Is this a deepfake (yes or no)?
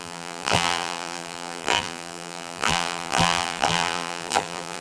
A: yes